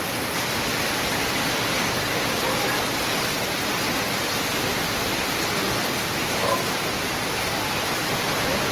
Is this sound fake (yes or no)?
no